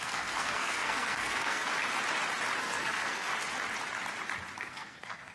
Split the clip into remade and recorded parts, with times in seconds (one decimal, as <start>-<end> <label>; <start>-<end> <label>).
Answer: 0.0-1.7 remade; 1.7-2.6 recorded; 2.6-3.3 remade; 3.3-4.6 recorded; 4.6-5.3 remade